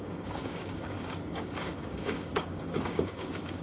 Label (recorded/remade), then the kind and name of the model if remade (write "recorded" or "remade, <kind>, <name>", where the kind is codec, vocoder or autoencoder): remade, codec, DAC